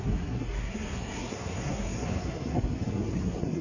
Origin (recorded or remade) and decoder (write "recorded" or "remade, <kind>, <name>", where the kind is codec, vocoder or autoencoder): remade, codec, SNAC